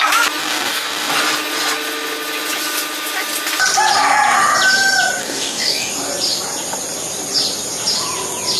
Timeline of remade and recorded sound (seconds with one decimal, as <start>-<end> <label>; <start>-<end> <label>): 0.0-0.4 recorded; 0.4-1.1 remade; 1.1-5.2 recorded; 5.2-5.9 remade; 5.9-8.6 recorded